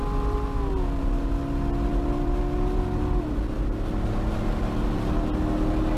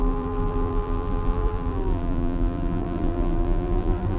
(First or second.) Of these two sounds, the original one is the first